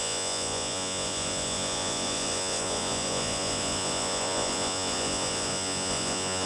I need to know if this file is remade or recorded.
remade